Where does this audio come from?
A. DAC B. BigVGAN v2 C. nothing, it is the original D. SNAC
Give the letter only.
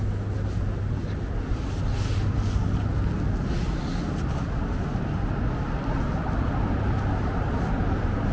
C